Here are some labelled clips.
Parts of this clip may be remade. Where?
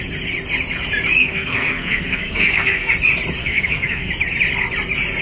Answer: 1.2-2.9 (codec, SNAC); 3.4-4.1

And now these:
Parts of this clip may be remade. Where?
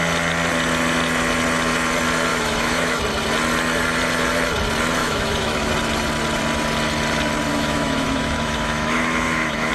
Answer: 2.3-3.0 (autoencoder, DAC-VAE); 5.0-5.7; 7.5-9.7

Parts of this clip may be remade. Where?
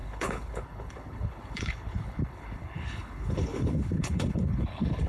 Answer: 0.0-5.1 (codec, HILCodec)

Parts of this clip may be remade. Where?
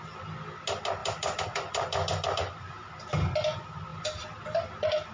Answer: 1.0-2.9 (vocoder, BigVGAN v2); 3.9-5.1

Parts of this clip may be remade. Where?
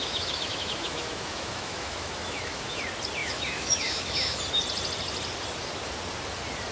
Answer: 0.0-2.8 (autoencoder, DAC-VAE); 3.2-4.4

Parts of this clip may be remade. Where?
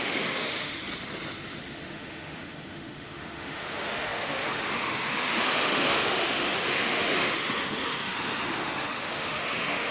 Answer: 0.0-0.8 (autoencoder, DAC-VAE); 1.6-9.9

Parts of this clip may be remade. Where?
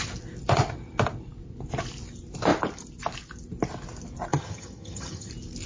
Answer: 4.3-5.3 (vocoder, HiFi-GAN)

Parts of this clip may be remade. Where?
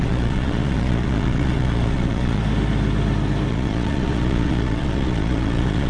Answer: 0.0-2.4 (vocoder, Vocos); 3.5-5.9